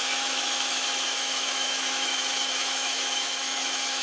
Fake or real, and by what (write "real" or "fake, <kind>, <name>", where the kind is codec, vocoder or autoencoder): fake, autoencoder, DAC-VAE